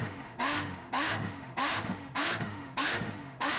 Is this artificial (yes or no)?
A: yes